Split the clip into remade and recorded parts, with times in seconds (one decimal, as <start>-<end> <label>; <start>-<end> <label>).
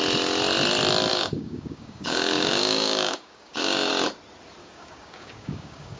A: 0.0-1.1 recorded; 1.1-3.9 remade; 3.9-4.6 recorded; 4.6-6.0 remade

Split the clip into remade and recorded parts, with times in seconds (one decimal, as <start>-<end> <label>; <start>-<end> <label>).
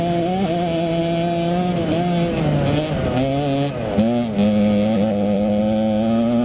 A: 0.0-6.4 recorded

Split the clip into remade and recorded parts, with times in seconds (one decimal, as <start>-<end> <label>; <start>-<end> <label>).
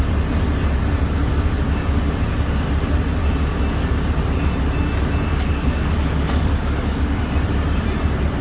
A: 0.0-5.3 recorded; 5.3-7.2 remade; 7.2-8.4 recorded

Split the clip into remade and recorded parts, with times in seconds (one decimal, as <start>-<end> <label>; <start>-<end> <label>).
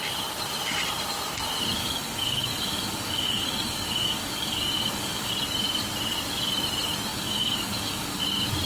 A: 0.0-1.8 recorded; 1.8-5.3 remade; 5.3-7.1 recorded; 7.1-8.2 remade; 8.2-8.7 recorded